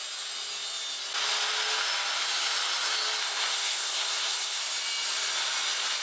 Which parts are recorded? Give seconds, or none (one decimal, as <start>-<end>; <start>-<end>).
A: 0.0-3.2; 4.6-6.0